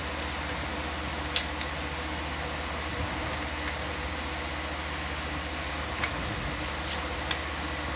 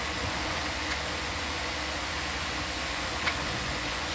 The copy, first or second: second